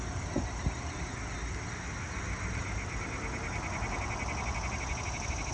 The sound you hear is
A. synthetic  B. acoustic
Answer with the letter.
B